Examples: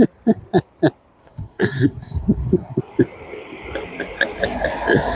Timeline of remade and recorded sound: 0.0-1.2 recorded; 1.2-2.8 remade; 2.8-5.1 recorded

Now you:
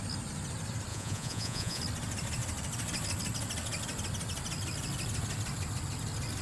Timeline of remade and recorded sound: 0.0-0.9 recorded; 0.9-1.8 remade; 1.8-6.4 recorded

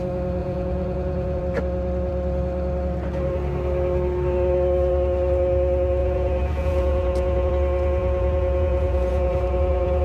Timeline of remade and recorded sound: 0.0-0.4 recorded; 0.4-1.4 remade; 1.4-6.0 recorded; 6.0-7.5 remade; 7.5-8.0 recorded; 8.0-10.0 remade

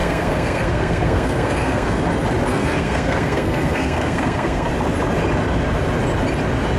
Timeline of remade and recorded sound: 0.0-2.0 remade; 2.0-2.5 recorded; 2.5-4.7 remade; 4.7-6.8 recorded

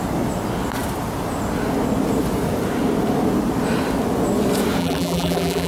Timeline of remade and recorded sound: 0.0-4.8 recorded; 4.8-5.7 remade

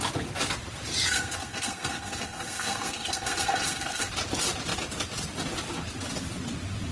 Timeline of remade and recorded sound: 0.0-1.1 recorded; 1.1-4.1 remade; 4.1-6.9 recorded

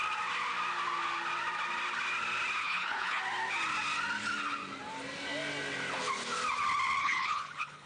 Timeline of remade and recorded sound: 0.0-2.6 recorded; 2.6-3.2 remade; 3.2-7.0 recorded; 7.0-7.9 remade

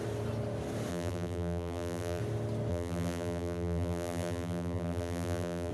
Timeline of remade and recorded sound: 0.0-0.9 recorded; 0.9-2.2 remade; 2.2-2.7 recorded; 2.7-5.7 remade